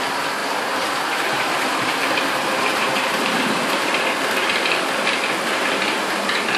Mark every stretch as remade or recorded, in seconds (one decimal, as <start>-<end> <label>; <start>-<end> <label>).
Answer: 0.0-0.4 recorded; 0.4-4.2 remade; 4.2-6.6 recorded